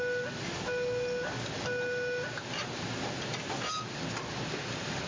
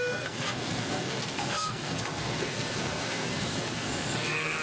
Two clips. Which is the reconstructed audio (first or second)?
second